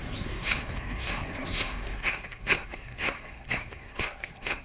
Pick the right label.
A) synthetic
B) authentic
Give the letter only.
A